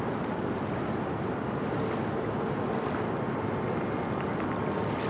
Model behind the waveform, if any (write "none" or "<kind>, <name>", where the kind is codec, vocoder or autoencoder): none